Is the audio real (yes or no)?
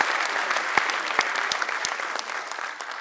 yes